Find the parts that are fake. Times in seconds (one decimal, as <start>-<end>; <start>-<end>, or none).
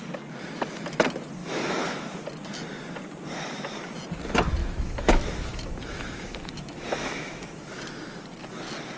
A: 1.4-2.2; 4.6-7.8